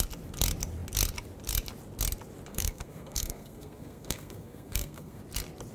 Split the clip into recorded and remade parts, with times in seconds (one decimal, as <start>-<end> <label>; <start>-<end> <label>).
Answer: 0.0-2.5 recorded; 2.5-5.2 remade; 5.2-5.7 recorded